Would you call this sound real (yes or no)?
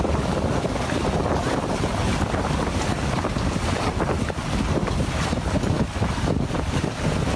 yes